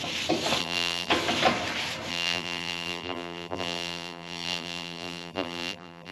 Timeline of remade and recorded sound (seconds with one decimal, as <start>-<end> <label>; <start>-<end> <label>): 0.0-0.6 recorded; 0.6-1.1 remade; 1.1-2.1 recorded; 2.1-6.1 remade